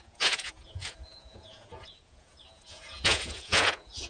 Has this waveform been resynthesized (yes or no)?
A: yes